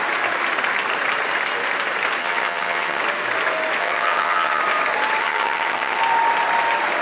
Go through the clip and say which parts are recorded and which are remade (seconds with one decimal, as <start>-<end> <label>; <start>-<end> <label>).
0.0-2.2 recorded; 2.2-3.0 remade; 3.0-3.8 recorded; 3.8-4.6 remade; 4.6-5.2 recorded; 5.2-6.0 remade; 6.0-7.0 recorded